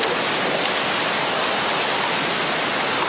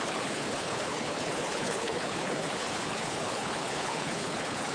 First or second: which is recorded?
first